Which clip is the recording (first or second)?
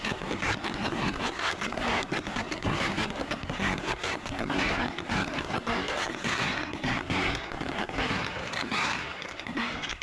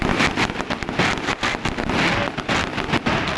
second